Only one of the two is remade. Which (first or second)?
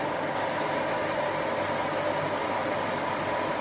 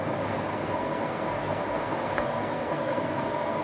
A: second